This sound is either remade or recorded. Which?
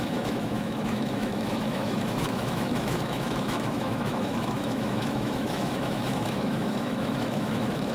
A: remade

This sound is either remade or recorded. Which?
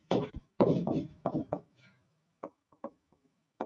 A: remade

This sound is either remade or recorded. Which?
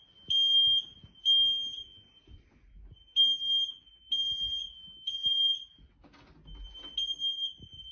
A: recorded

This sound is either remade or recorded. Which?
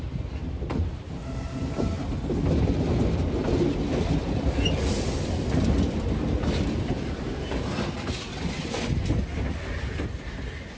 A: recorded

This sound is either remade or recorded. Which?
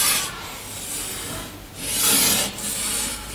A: recorded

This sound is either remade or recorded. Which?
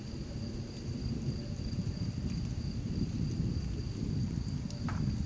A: recorded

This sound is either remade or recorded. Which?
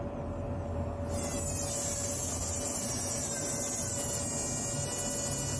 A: recorded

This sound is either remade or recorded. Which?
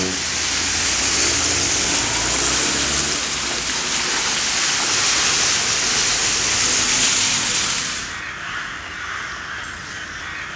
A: recorded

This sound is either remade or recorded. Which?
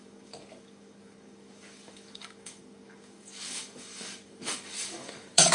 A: remade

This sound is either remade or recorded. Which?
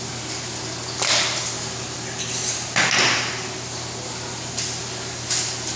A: recorded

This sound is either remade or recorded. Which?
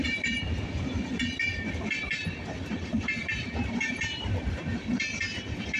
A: remade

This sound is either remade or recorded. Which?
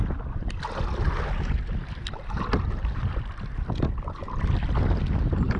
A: recorded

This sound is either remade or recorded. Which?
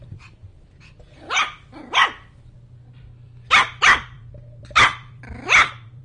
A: remade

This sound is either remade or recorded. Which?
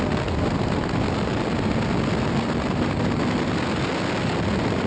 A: recorded